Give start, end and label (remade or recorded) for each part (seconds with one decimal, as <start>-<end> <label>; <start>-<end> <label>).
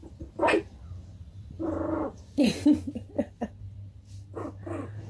0.0-5.1 recorded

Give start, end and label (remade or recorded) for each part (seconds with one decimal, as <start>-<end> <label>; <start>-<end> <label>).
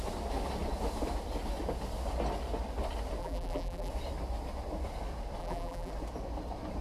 0.0-3.2 recorded; 3.2-3.9 remade; 3.9-5.4 recorded; 5.4-5.9 remade; 5.9-6.8 recorded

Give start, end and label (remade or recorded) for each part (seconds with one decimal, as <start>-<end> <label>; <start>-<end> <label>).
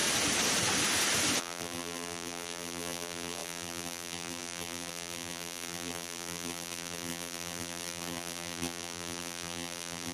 0.0-1.4 recorded; 1.4-10.1 remade